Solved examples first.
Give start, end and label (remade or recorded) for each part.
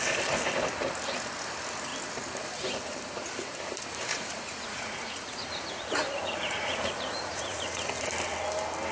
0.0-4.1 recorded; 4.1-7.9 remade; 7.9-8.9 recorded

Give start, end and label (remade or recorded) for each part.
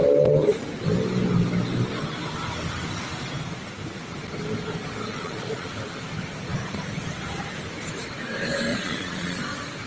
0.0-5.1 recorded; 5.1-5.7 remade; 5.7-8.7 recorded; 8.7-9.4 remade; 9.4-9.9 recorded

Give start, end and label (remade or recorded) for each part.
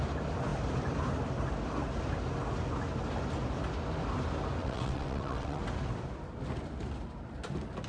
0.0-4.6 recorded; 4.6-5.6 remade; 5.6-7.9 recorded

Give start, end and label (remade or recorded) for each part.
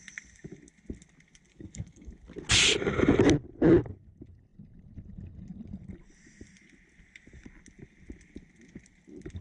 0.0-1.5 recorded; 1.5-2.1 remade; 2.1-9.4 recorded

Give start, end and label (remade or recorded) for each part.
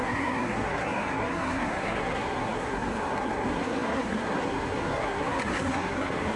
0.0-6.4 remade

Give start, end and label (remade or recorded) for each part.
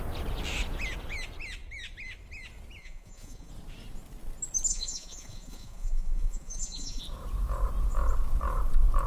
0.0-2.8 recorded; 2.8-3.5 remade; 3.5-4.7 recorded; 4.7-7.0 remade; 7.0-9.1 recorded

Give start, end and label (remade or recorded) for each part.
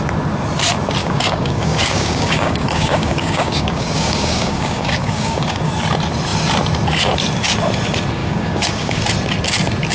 0.0-1.0 recorded; 1.0-5.7 remade; 5.7-8.2 recorded; 8.2-9.0 remade; 9.0-9.9 recorded